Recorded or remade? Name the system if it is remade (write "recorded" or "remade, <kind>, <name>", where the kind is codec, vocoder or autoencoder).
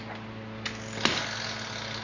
recorded